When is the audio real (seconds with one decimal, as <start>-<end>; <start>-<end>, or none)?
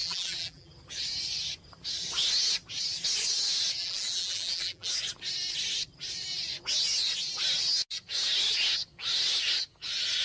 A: 0.7-3.8; 4.9-10.2